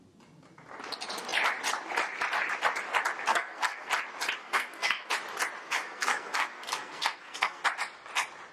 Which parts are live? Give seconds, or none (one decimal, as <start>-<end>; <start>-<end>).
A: 0.0-3.3; 3.9-4.4; 5.1-5.6; 7.6-8.5